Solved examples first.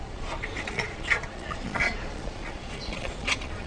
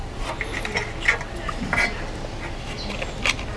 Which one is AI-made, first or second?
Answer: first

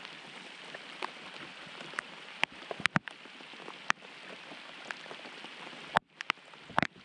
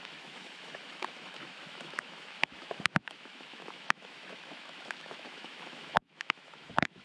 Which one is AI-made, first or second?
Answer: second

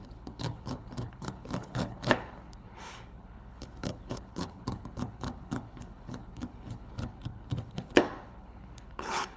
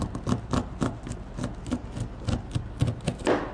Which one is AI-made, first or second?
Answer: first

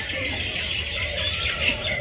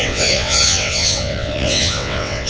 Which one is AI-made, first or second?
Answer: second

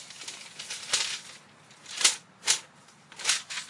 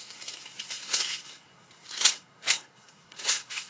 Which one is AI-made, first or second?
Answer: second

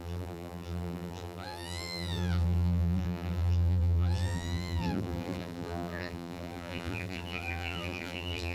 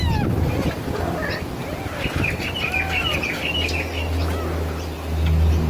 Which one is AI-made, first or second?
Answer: first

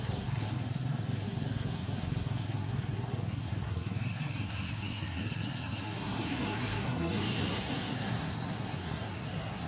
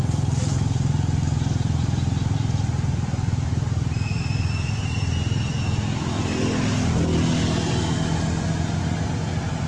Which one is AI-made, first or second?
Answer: first